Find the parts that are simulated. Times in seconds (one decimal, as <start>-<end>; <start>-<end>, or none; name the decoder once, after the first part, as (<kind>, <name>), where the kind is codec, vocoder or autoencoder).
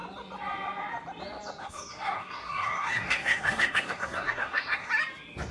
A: 1.6-4.9 (codec, SNAC)